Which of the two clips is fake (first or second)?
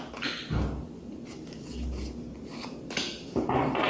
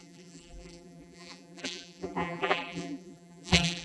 second